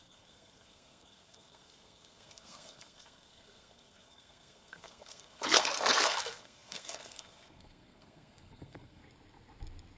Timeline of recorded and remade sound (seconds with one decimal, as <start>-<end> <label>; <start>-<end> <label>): 0.0-9.0 remade; 9.0-10.0 recorded